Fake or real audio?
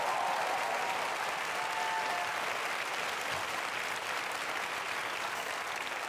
real